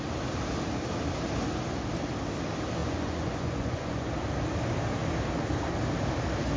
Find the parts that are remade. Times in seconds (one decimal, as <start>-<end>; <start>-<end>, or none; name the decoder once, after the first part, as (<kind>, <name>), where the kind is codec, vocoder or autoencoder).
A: 2.8-4.1 (vocoder, Vocos)